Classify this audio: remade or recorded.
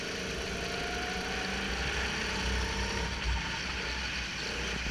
recorded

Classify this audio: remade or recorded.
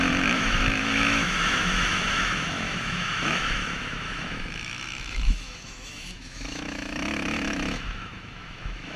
remade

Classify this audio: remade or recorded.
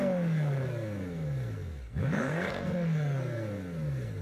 remade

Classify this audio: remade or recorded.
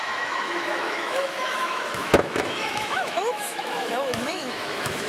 remade